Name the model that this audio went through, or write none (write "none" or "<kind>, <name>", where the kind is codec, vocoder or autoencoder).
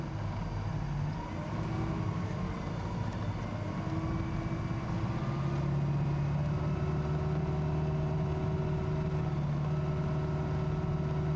none